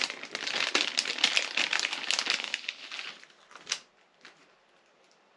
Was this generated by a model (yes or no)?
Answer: no